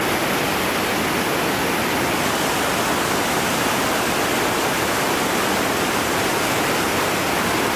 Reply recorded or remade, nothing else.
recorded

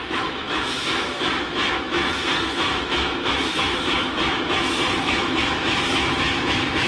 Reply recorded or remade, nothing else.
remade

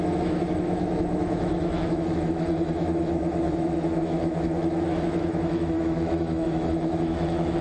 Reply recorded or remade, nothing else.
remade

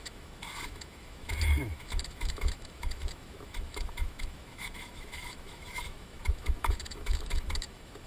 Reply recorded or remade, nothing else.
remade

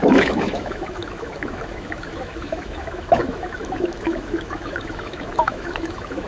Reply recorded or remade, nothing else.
remade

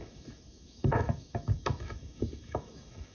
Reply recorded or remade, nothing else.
remade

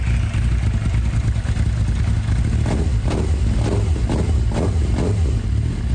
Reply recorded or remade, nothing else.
recorded